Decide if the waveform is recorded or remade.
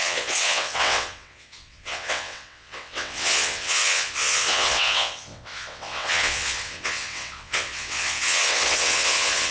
remade